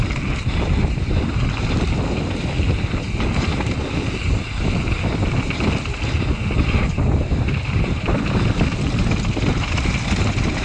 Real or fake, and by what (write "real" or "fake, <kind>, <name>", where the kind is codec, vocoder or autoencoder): real